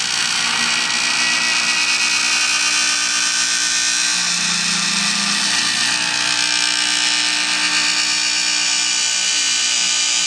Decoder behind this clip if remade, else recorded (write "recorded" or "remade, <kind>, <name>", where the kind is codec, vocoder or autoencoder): recorded